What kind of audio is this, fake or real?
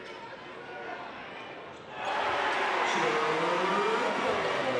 real